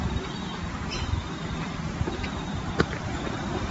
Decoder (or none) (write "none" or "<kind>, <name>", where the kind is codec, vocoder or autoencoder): vocoder, BigVGAN v2